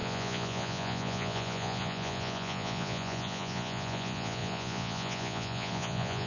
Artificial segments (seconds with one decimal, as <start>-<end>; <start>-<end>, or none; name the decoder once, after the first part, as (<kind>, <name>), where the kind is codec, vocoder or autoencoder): 0.0-6.3 (vocoder, Vocos)